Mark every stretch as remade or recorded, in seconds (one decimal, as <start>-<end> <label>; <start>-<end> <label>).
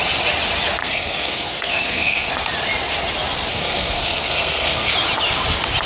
0.0-0.8 recorded; 0.8-2.3 remade; 2.3-3.5 recorded; 3.5-4.9 remade; 4.9-5.9 recorded